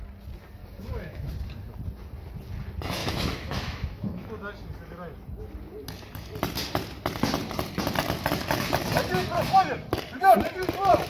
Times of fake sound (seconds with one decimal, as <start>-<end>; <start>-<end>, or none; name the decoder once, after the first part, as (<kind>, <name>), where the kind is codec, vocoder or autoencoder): 0.6-1.3 (autoencoder, DAC-VAE); 3.0-4.3